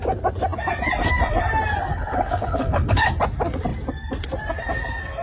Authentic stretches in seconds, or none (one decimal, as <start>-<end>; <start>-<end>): 0.0-1.9; 3.1-5.2